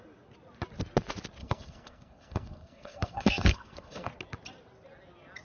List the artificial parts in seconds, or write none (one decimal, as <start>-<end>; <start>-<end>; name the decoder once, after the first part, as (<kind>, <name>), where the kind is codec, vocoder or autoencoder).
1.4-4.1 (codec, SNAC)